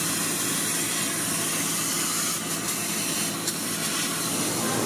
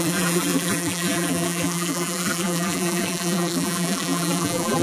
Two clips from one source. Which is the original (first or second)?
first